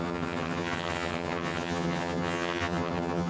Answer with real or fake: fake